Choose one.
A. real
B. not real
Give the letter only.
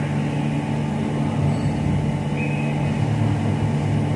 A